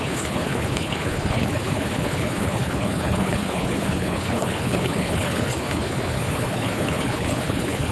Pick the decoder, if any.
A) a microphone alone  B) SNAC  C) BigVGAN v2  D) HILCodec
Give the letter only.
D